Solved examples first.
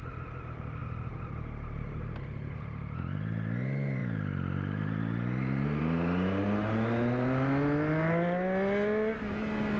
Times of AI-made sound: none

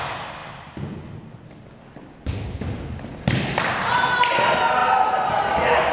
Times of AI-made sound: none

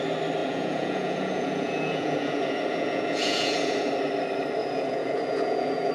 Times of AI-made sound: 0.4-3.9; 4.6-5.9

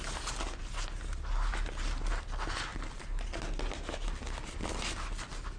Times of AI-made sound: none

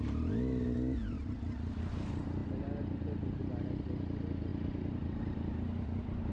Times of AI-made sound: none

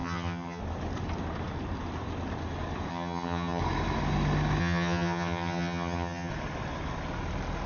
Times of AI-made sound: 0.0-0.6; 2.9-3.6; 4.6-6.3